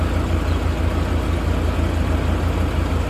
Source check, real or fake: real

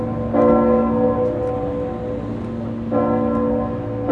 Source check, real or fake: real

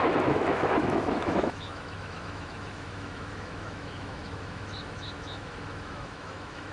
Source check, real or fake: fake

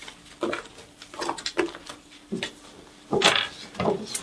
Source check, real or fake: real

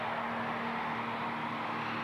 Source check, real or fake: real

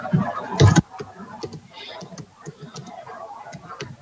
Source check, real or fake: real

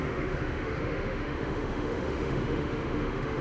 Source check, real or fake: fake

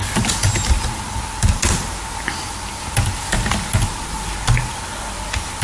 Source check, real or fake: real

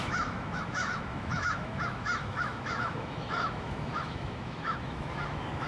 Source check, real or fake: fake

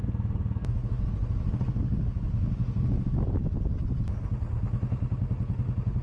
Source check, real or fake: real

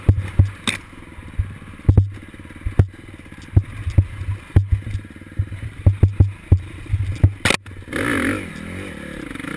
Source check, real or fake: real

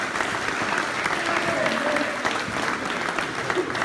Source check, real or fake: real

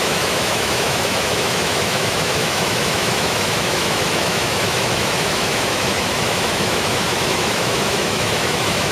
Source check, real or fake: fake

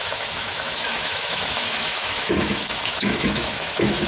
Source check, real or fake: fake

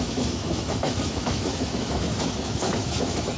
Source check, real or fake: fake